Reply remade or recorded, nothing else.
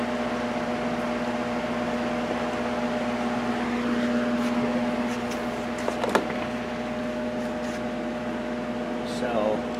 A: recorded